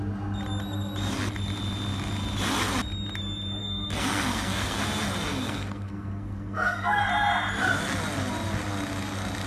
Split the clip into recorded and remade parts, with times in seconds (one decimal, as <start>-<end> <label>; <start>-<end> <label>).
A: 0.0-3.6 recorded; 3.6-4.8 remade; 4.8-5.3 recorded; 5.3-7.0 remade; 7.0-9.5 recorded